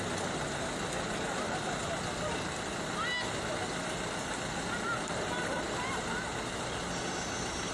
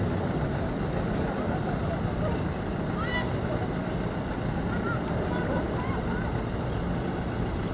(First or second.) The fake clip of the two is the second